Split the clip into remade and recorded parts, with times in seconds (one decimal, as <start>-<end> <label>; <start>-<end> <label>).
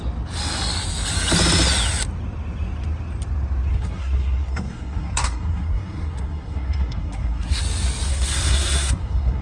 0.0-3.7 recorded; 3.7-7.6 remade; 7.6-8.1 recorded; 8.1-9.4 remade